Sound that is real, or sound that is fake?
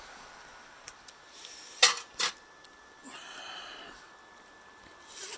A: real